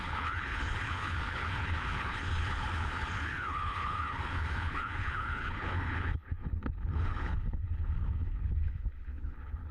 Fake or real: fake